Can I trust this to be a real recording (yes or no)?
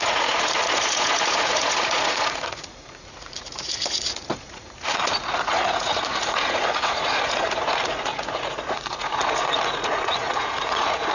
no